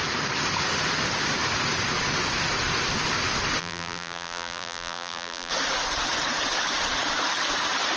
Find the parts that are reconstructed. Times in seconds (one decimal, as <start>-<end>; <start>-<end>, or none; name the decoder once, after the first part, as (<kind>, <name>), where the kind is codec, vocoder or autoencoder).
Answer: 3.6-5.5 (vocoder, BigVGAN v2)

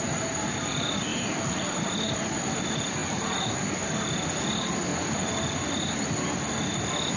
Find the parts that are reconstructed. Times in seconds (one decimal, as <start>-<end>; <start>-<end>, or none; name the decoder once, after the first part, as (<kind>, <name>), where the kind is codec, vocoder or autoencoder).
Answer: 1.1-1.8 (vocoder, BigVGAN v2); 3.0-3.5; 4.9-5.4

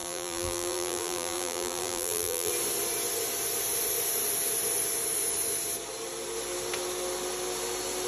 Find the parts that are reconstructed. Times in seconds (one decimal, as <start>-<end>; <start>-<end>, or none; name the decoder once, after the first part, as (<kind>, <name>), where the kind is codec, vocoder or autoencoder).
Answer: 0.0-2.5 (vocoder, BigVGAN v2)

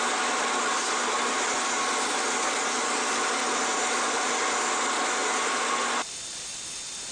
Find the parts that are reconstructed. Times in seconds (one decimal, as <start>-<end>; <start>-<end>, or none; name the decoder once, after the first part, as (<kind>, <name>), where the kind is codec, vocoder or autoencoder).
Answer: none

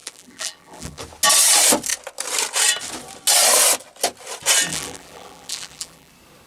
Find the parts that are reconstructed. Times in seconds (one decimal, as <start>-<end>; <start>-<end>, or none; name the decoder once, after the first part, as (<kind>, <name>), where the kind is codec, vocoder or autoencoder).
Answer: 0.0-1.0 (vocoder, BigVGAN v2); 4.7-6.1

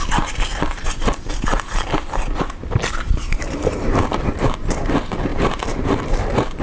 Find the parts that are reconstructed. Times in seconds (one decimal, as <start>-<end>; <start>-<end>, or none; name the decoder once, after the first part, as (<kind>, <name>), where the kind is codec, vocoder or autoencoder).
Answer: 0.5-4.5 (vocoder, BigVGAN v2); 5.3-6.6

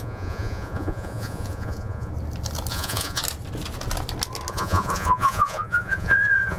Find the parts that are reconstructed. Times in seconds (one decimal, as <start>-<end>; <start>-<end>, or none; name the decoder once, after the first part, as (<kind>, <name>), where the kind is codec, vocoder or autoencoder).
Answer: 0.0-2.1 (vocoder, Vocos); 2.7-3.2; 4.5-6.6

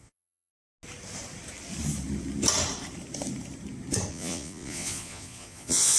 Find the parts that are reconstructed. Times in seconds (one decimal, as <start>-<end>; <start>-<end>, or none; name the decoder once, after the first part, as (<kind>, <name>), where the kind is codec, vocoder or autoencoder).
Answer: 0.0-0.5 (vocoder, Vocos); 4.1-6.0